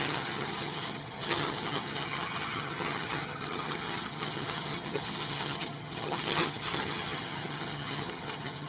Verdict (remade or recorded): remade